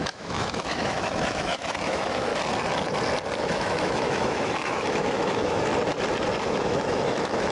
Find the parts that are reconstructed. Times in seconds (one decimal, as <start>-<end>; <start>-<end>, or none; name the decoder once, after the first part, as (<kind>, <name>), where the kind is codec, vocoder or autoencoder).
0.0-2.3 (autoencoder, DAC-VAE); 3.4-5.7; 6.5-7.5